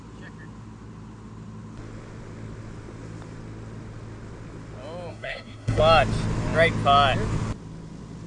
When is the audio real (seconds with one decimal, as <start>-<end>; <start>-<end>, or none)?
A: 0.0-5.1; 5.8-8.3